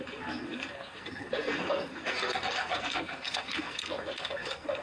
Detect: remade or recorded remade